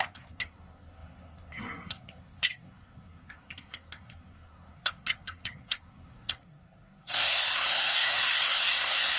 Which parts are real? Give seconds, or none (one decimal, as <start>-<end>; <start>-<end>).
none